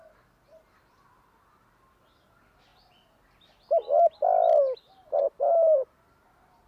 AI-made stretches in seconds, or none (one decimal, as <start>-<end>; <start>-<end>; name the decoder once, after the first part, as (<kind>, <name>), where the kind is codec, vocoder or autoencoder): none